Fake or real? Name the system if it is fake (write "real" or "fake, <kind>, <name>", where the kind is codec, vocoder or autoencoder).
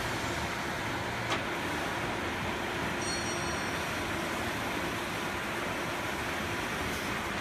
real